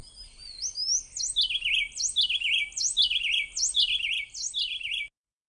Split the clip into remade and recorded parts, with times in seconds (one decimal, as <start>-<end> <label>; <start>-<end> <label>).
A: 0.0-5.5 recorded